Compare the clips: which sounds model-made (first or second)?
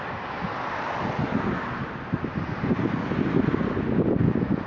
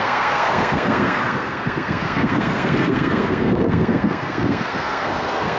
second